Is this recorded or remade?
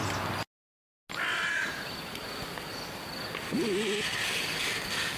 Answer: recorded